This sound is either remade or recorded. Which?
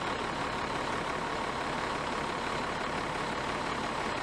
recorded